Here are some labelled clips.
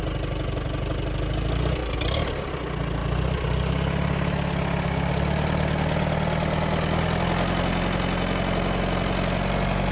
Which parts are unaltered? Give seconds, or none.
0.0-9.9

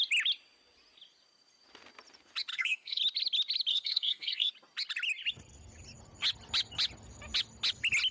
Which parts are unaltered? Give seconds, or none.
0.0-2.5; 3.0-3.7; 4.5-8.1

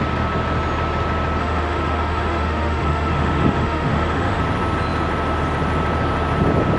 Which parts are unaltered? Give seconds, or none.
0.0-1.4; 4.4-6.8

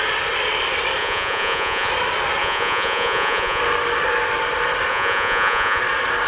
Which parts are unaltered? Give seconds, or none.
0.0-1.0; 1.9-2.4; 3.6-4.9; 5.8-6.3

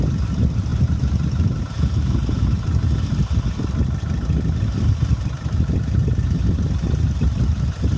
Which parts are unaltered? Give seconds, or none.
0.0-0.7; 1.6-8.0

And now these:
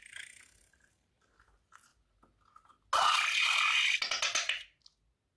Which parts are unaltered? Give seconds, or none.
1.9-5.4

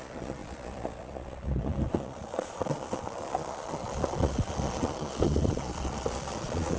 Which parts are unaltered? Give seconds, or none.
none